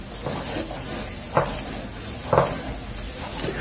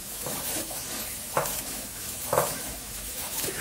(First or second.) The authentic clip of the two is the first